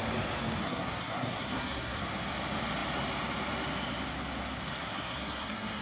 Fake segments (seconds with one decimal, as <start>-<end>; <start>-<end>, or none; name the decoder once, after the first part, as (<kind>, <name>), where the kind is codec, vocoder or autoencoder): 0.6-2.0 (codec, SNAC); 4.8-5.8